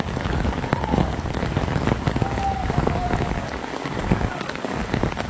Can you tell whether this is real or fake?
fake